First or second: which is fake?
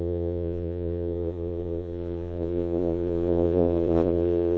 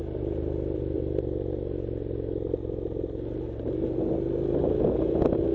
first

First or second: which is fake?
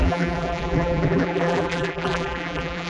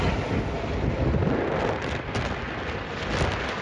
first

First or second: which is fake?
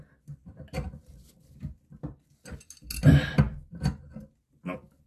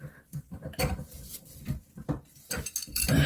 second